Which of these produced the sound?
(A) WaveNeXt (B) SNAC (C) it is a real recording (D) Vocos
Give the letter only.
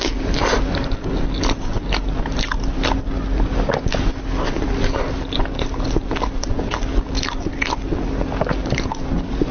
C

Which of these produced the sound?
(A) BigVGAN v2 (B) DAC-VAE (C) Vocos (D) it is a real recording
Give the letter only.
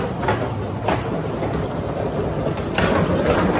D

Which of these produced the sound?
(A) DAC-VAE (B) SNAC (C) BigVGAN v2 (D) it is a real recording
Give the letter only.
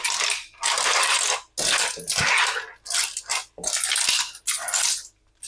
D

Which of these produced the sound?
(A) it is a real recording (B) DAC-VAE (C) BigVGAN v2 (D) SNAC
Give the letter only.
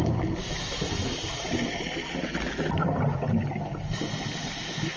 A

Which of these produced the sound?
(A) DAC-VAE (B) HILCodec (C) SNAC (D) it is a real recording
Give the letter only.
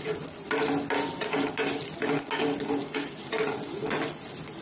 D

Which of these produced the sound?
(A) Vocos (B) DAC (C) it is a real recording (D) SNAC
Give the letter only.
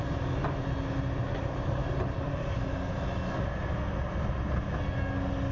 C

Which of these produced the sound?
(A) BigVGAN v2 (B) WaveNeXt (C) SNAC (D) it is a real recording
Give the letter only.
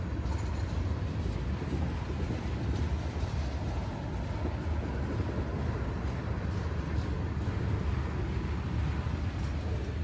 D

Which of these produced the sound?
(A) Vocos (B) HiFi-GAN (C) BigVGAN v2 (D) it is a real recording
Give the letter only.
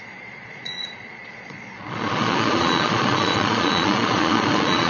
A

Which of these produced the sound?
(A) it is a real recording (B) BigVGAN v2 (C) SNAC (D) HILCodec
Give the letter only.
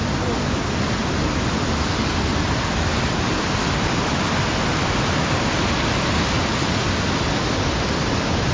A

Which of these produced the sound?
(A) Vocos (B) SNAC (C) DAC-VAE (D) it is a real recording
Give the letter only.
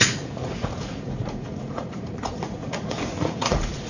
A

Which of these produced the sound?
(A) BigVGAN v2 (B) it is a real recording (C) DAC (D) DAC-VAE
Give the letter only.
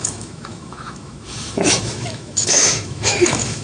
D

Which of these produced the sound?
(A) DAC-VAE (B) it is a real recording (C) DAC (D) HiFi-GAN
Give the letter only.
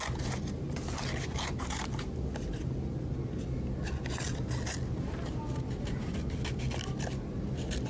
B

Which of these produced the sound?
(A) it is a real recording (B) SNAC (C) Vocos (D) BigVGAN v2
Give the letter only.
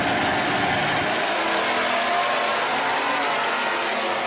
A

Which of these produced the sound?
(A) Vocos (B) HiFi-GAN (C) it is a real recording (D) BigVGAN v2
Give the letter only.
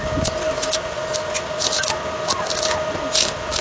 C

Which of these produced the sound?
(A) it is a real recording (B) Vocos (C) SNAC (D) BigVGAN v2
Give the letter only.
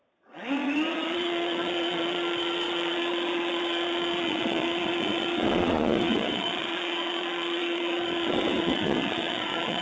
B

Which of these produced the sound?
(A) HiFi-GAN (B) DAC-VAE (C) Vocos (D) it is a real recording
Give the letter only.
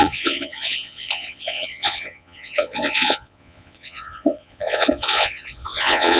C